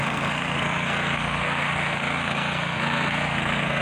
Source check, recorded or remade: remade